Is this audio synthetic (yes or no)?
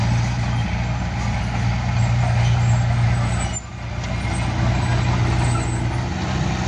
no